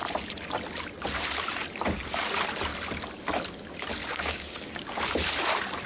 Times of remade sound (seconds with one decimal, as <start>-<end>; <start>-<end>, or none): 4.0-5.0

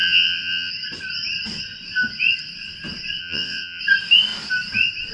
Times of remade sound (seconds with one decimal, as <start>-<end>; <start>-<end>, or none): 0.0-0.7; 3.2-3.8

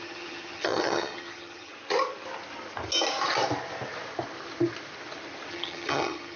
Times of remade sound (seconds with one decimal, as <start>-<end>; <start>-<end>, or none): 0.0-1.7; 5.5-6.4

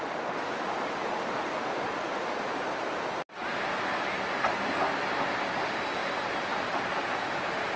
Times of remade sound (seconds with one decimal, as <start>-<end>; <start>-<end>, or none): 6.0-6.8

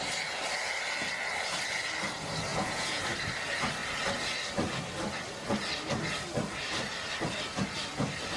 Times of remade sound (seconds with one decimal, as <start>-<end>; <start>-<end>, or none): 2.5-3.0

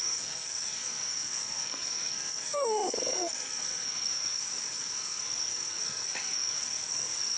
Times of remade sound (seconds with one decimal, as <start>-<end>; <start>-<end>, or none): 0.0-7.4

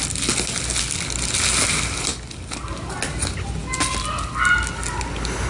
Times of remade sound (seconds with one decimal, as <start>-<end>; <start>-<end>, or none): none

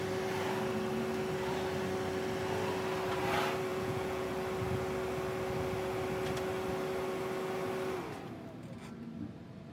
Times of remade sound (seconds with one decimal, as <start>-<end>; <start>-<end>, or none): 3.7-4.3